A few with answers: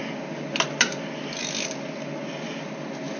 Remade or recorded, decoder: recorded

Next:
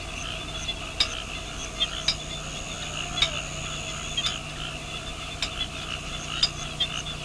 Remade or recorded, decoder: recorded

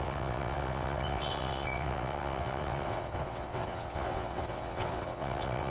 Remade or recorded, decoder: remade, vocoder, WaveNeXt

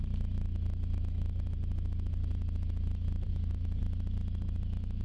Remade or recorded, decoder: recorded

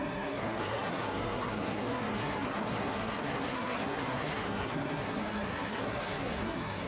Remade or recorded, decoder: remade, codec, SNAC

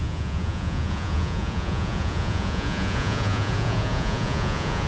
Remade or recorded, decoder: remade, vocoder, Vocos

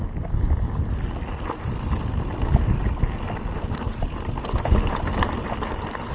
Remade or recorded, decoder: recorded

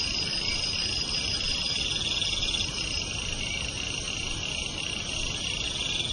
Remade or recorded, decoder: recorded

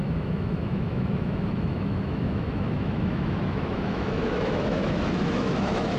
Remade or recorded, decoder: remade, autoencoder, DAC-VAE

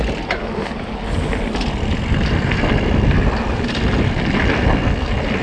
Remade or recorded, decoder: recorded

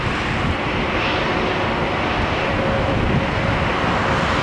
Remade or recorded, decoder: recorded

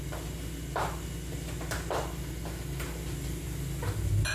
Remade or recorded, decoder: recorded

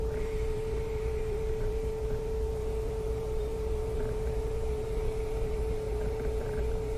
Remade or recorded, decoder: remade, vocoder, BigVGAN v2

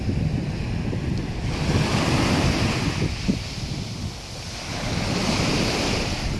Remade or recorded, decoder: recorded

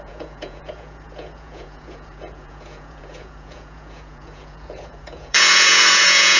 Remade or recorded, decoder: remade, vocoder, Vocos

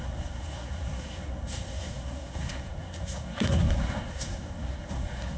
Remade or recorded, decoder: remade, codec, SNAC